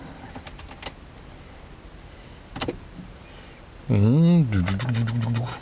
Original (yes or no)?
yes